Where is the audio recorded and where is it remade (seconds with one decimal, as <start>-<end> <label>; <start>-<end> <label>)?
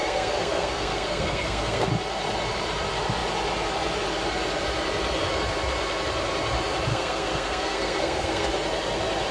0.0-1.9 remade; 1.9-6.9 recorded; 6.9-8.5 remade; 8.5-9.3 recorded